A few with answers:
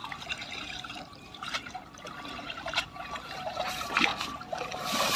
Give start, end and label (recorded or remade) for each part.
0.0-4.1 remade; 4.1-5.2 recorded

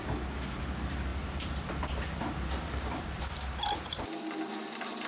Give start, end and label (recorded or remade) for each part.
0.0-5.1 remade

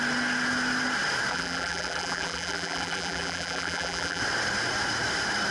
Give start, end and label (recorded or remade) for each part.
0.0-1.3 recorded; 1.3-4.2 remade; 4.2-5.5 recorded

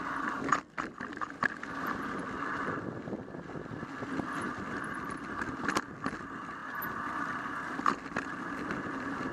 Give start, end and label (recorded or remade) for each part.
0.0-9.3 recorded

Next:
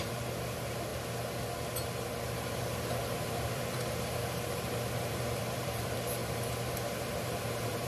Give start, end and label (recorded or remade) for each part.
0.0-0.9 remade; 0.9-2.5 recorded; 2.5-6.2 remade; 6.2-7.0 recorded; 7.0-7.9 remade

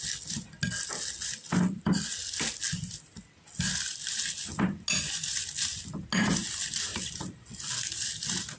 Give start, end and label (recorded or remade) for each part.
0.0-8.6 recorded

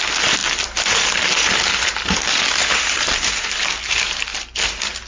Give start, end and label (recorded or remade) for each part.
0.0-5.1 recorded

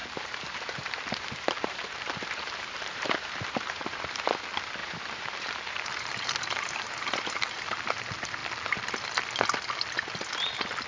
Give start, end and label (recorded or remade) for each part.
0.0-4.3 remade; 4.3-4.8 recorded; 4.8-7.6 remade; 7.6-10.9 recorded